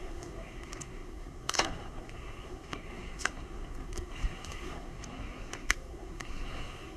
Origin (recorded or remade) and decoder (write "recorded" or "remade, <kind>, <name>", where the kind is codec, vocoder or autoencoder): remade, codec, SNAC